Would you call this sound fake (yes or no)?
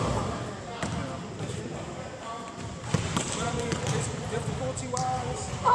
yes